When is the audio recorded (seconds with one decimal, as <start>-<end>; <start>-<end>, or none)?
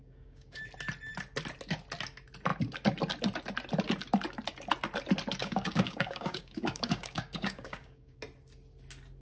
0.6-5.4; 8.2-9.2